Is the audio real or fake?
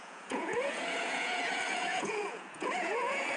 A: fake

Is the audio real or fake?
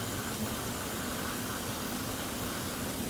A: real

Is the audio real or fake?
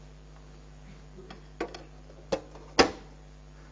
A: real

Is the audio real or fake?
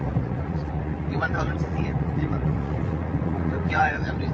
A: fake